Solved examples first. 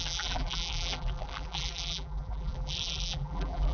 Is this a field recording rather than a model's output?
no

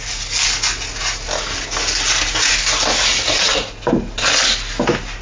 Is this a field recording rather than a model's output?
yes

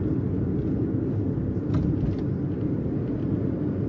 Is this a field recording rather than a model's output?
yes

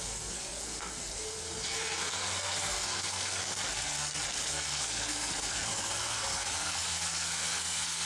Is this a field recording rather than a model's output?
no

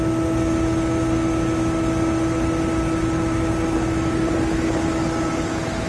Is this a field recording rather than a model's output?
yes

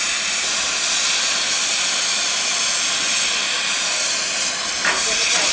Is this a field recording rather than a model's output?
yes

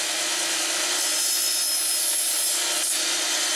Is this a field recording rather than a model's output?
yes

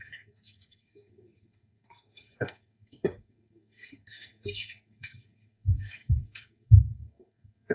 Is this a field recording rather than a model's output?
no